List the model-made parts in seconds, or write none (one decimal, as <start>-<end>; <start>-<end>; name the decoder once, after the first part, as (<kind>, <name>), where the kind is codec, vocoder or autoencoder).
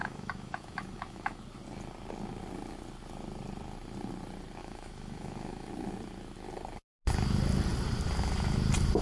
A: 0.0-1.4 (autoencoder, DAC-VAE); 4.6-5.7